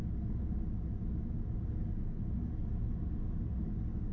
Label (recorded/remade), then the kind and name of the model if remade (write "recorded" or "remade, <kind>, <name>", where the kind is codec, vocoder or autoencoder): recorded